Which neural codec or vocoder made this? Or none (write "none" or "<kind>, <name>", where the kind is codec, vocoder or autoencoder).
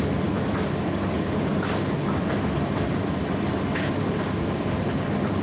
none